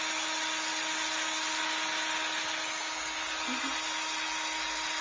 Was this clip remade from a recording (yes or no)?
no